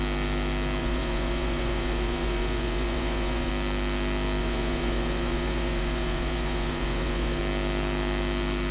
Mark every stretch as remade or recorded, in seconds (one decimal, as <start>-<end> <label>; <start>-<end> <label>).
0.0-0.8 recorded; 0.8-3.5 remade; 3.5-4.4 recorded; 4.4-7.4 remade; 7.4-8.7 recorded